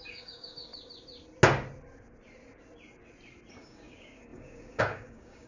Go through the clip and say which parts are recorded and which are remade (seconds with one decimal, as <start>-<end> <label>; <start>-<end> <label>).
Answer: 0.0-0.7 remade; 0.7-3.5 recorded; 3.5-5.5 remade

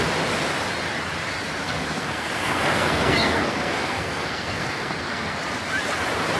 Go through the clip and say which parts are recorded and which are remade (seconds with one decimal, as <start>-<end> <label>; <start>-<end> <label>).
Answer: 0.0-1.6 recorded; 1.6-5.4 remade; 5.4-6.4 recorded

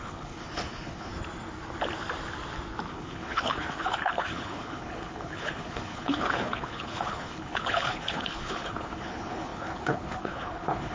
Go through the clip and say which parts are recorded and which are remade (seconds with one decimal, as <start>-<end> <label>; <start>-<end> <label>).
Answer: 0.0-1.1 remade; 1.1-2.9 recorded; 2.9-10.9 remade

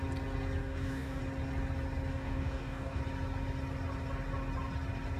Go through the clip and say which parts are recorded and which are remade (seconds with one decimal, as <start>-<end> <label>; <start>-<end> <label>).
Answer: 0.0-0.6 recorded; 0.6-1.2 remade; 1.2-2.1 recorded; 2.1-3.0 remade; 3.0-5.2 recorded

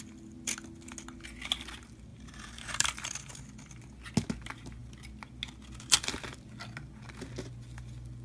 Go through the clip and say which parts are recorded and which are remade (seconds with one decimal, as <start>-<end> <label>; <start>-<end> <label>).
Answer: 0.0-2.1 recorded; 2.1-3.4 remade; 3.4-8.2 recorded

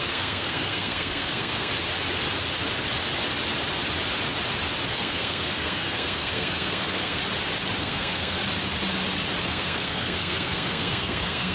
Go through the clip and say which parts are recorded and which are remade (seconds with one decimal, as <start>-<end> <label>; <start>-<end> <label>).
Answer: 0.0-1.7 remade; 1.7-4.9 recorded; 4.9-7.2 remade; 7.2-7.8 recorded; 7.8-8.4 remade; 8.4-9.4 recorded; 9.4-11.5 remade

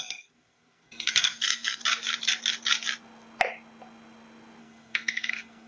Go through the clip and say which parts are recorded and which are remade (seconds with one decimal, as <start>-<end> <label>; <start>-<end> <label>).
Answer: 0.0-1.8 remade; 1.8-4.6 recorded; 4.6-5.7 remade